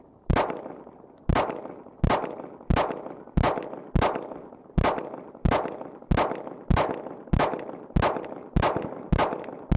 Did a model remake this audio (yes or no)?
no